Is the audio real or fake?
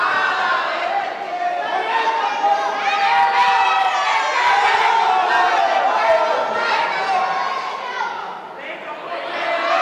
real